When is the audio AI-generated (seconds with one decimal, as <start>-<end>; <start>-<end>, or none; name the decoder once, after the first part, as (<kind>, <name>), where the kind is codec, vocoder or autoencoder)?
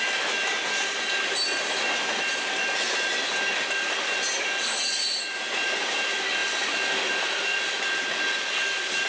none